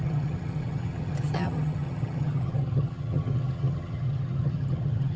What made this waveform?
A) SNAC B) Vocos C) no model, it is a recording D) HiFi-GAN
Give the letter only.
D